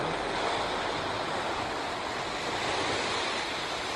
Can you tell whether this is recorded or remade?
recorded